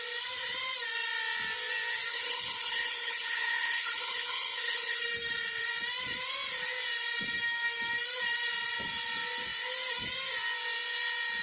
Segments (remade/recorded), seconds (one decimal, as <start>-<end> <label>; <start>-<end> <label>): 0.0-2.1 recorded; 2.1-5.0 remade; 5.0-11.4 recorded